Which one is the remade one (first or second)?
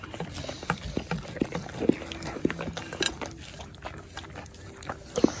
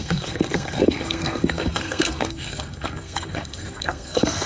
second